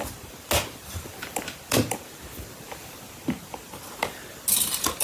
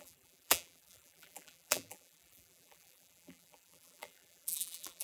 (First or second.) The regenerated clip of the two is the second